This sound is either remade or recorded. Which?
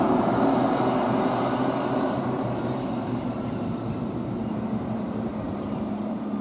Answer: remade